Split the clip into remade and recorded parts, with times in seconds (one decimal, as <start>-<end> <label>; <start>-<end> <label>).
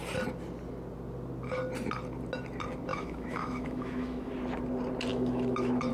0.0-2.9 recorded; 2.9-4.3 remade; 4.3-5.1 recorded; 5.1-5.9 remade